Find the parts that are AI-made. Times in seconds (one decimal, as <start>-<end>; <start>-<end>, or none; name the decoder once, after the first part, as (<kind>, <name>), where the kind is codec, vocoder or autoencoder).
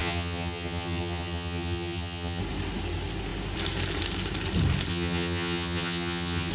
0.0-2.4 (vocoder, HiFi-GAN); 4.9-6.5